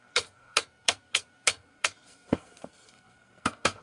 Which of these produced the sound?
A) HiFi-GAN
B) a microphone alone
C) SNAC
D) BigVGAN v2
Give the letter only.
C